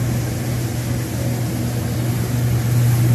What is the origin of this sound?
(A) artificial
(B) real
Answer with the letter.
B